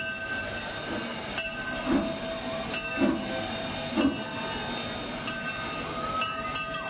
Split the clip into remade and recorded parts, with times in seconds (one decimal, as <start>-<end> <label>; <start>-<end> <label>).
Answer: 0.0-6.9 recorded